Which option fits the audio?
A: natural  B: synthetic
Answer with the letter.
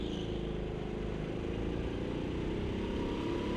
A